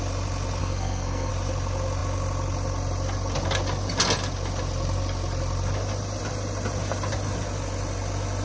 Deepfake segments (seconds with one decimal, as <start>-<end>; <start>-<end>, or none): 0.6-1.3